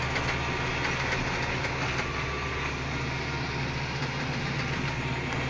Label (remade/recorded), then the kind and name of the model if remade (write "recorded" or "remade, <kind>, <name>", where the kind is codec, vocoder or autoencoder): recorded